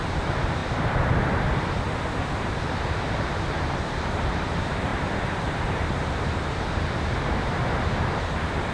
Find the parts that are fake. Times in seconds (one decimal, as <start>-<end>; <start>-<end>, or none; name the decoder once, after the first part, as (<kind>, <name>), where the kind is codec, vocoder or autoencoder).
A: 0.0-0.6 (vocoder, BigVGAN v2); 2.3-8.7

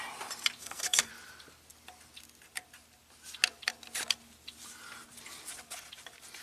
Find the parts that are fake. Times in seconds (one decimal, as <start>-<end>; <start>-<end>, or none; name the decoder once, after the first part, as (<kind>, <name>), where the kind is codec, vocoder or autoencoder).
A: 0.6-1.1 (codec, SNAC)

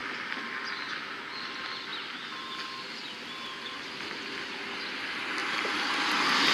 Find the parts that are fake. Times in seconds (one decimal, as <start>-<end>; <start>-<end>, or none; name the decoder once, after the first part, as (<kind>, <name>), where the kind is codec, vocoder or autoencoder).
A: 0.0-1.1 (vocoder, BigVGAN v2)